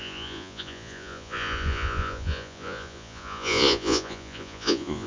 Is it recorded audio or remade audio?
remade